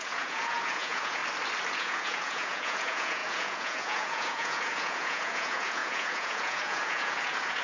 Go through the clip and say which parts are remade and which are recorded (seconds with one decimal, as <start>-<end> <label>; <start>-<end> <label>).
0.0-1.2 remade; 1.2-1.7 recorded; 1.7-7.6 remade